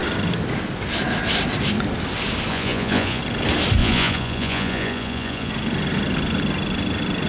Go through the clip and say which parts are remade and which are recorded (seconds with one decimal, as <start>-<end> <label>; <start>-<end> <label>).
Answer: 0.0-2.5 recorded; 2.5-3.2 remade; 3.2-3.8 recorded; 3.8-5.5 remade; 5.5-7.3 recorded